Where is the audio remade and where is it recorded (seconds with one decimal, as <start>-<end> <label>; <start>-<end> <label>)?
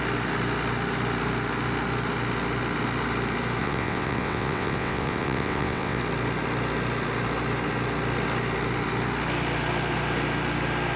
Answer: 0.0-3.6 recorded; 3.6-6.0 remade; 6.0-11.0 recorded